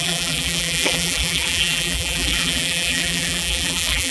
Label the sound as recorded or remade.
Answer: remade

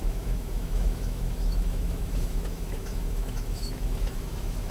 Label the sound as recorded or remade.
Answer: remade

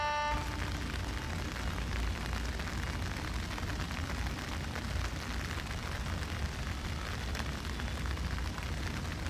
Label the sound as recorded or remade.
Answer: recorded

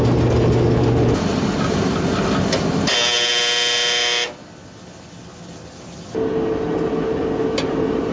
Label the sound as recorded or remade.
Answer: recorded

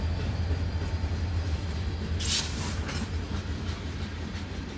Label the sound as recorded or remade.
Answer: recorded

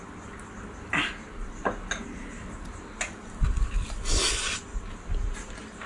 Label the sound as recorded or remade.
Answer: recorded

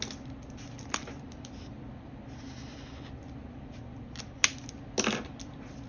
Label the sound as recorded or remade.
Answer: recorded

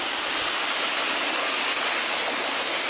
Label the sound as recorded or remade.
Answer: recorded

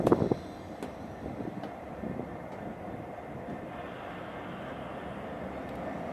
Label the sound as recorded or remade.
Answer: recorded